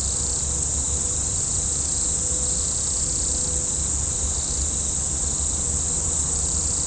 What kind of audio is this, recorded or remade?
recorded